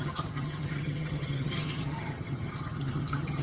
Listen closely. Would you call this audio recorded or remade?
remade